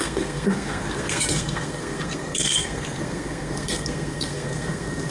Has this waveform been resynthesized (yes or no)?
yes